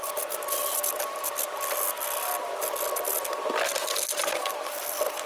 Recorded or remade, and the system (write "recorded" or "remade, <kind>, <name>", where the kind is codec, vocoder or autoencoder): recorded